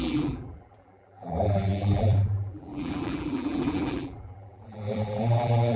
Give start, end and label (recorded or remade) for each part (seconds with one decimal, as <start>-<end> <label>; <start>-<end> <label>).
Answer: 0.0-5.8 remade